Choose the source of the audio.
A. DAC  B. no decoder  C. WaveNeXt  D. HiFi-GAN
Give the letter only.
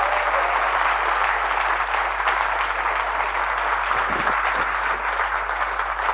B